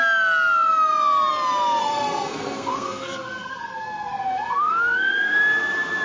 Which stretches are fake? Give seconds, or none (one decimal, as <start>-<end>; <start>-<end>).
1.8-5.4